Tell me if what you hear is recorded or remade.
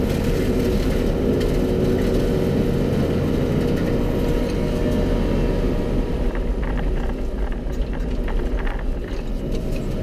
recorded